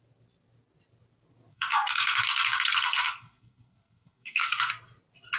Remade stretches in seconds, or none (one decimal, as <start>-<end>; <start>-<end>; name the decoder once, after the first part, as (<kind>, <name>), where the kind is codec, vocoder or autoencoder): 1.5-4.7 (codec, SNAC)